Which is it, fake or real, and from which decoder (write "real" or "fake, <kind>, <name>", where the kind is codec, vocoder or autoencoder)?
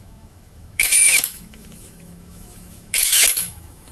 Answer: fake, autoencoder, DAC-VAE